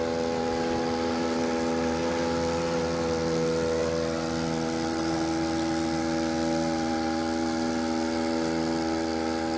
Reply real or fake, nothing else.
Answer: real